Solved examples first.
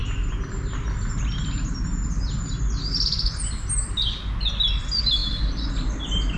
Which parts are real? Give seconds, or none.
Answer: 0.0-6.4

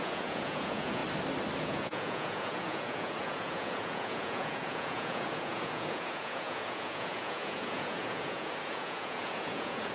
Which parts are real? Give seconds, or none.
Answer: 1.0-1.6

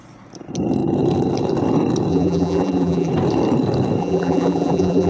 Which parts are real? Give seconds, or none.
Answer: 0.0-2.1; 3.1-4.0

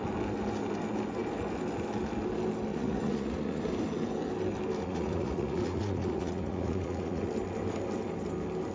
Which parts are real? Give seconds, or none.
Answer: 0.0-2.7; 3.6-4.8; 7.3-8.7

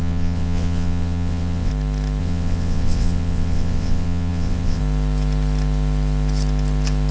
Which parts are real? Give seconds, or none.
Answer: 1.7-2.2; 4.8-7.1

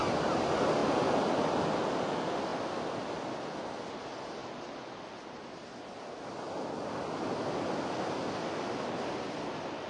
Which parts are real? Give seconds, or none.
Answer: 0.0-9.9

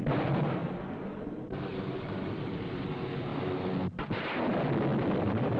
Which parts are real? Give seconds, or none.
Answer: 0.0-0.6; 1.2-1.7; 2.8-4.9

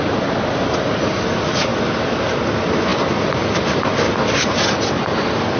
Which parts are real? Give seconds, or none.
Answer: 0.0-5.6